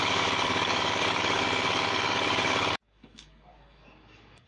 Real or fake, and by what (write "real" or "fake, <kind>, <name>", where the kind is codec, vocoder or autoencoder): fake, codec, DAC